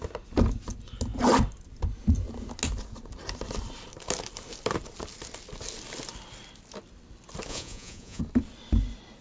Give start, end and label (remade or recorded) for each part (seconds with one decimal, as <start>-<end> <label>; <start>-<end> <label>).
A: 0.0-7.5 recorded; 7.5-8.2 remade; 8.2-9.2 recorded